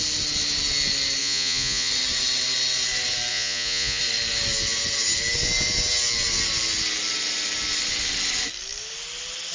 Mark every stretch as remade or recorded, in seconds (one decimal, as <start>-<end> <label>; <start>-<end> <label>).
0.0-1.2 recorded; 1.2-1.9 remade; 1.9-3.3 recorded; 3.3-4.0 remade; 4.0-9.5 recorded